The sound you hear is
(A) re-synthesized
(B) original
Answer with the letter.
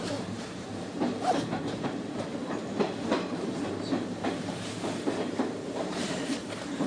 A